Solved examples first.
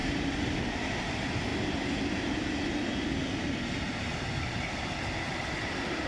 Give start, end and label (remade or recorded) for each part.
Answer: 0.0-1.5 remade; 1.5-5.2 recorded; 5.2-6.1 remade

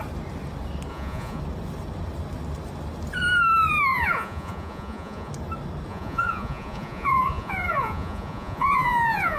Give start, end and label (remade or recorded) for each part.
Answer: 0.0-0.9 recorded; 0.9-1.4 remade; 1.4-3.9 recorded; 3.9-5.3 remade; 5.3-5.9 recorded; 5.9-9.4 remade

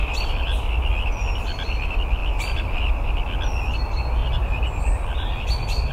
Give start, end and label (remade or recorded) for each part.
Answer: 0.0-2.2 recorded; 2.2-2.8 remade; 2.8-4.2 recorded; 4.2-5.9 remade

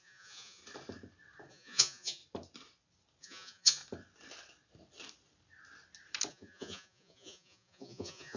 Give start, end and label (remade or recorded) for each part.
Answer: 0.0-0.6 remade; 0.6-1.5 recorded; 1.5-2.2 remade; 2.2-3.2 recorded; 3.2-3.8 remade; 3.8-6.3 recorded; 6.3-8.4 remade